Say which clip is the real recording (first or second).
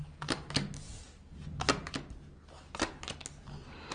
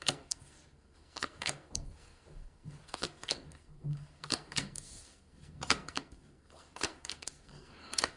first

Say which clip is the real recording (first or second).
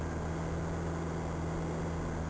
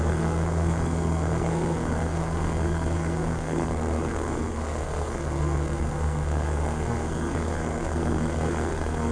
first